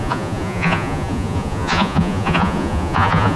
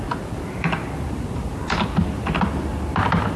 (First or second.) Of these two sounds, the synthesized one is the first